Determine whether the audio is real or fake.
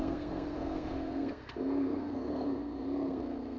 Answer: fake